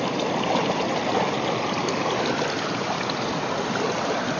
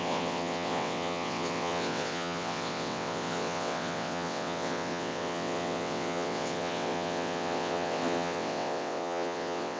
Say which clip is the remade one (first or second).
second